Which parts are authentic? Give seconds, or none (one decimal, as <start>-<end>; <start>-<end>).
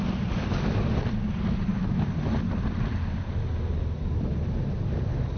0.0-1.7; 4.3-5.4